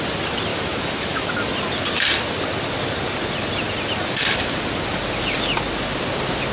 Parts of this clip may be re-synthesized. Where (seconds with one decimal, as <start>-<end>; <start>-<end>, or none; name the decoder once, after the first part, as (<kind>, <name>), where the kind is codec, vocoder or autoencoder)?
0.5-1.3 (autoencoder, DAC-VAE)